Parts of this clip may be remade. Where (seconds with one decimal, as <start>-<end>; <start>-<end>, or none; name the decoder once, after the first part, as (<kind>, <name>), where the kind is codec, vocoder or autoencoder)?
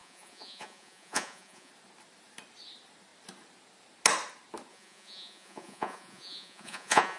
0.0-1.7 (vocoder, Vocos); 4.7-7.2